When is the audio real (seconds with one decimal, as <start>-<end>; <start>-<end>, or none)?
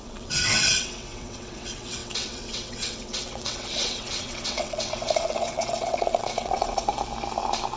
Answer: 6.9-7.8